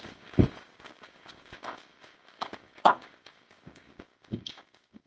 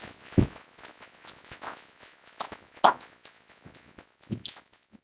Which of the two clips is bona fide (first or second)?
second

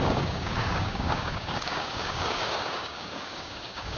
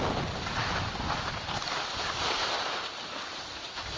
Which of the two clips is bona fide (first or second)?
second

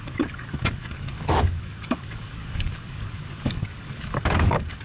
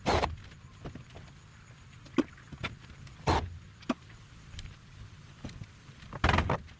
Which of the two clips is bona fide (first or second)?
second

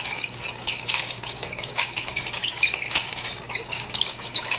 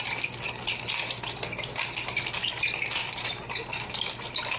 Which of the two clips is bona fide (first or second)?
second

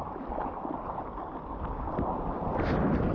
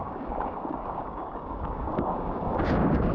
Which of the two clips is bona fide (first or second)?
first